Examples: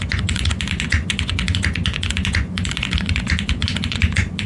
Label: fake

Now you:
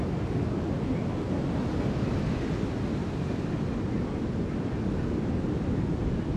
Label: real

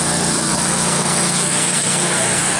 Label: fake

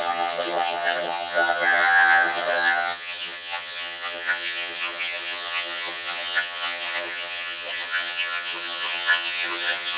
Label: fake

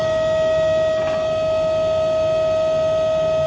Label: real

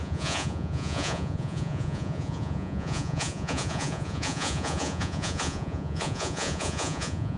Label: fake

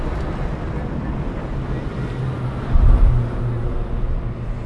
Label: real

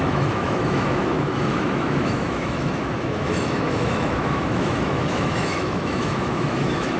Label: fake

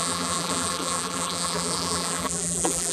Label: fake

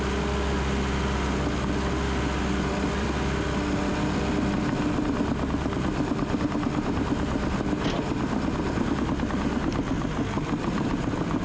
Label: real